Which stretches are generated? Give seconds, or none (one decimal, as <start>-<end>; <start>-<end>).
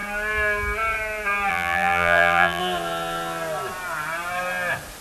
1.5-2.6